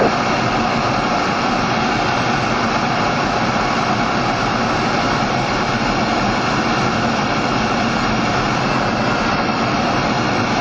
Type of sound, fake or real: fake